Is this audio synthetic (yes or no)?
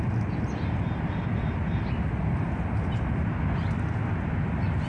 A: no